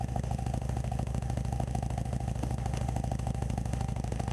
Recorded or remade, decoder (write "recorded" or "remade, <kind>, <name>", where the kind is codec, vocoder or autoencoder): remade, autoencoder, DAC-VAE